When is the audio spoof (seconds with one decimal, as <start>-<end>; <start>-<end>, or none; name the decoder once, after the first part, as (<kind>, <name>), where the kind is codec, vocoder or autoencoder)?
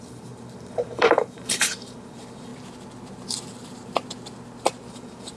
0.0-2.5 (vocoder, BigVGAN v2); 4.9-5.4